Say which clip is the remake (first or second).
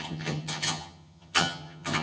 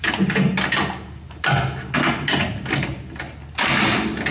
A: first